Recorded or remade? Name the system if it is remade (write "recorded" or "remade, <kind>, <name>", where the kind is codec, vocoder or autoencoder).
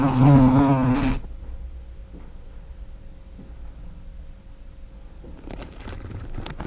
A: recorded